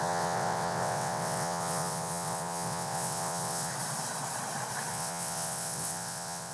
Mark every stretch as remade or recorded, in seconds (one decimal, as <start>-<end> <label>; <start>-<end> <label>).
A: 0.0-3.7 remade; 3.7-4.9 recorded; 4.9-6.5 remade